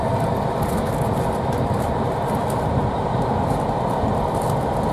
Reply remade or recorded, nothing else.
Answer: recorded